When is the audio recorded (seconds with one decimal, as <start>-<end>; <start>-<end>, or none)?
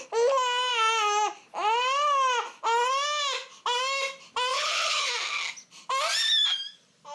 0.0-4.5; 5.1-7.1